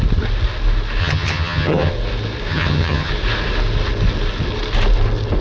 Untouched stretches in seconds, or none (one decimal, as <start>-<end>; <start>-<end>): 0.0-1.0; 1.9-2.5; 3.1-5.4